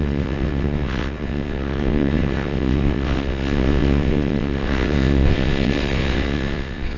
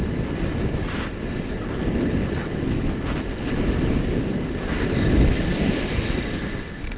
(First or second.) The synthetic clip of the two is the first